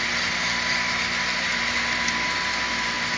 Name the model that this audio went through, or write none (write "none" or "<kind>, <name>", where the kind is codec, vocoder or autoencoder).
none